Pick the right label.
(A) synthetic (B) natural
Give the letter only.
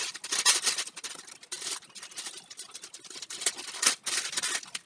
B